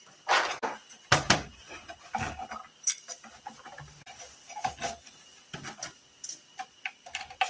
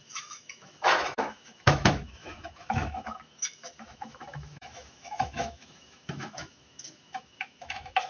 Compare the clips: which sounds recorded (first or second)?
first